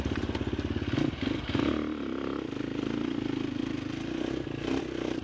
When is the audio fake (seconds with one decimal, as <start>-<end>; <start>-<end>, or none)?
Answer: none